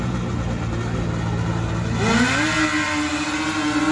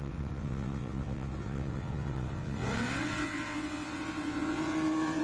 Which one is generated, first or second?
second